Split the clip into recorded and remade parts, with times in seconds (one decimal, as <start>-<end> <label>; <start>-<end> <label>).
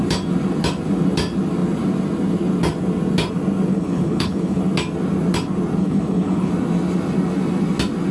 0.0-3.7 recorded; 3.7-4.6 remade; 4.6-5.8 recorded; 5.8-6.5 remade; 6.5-8.1 recorded